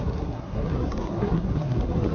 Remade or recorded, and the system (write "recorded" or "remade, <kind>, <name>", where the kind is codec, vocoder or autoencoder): remade, codec, SNAC